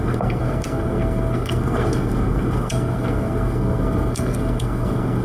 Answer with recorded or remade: remade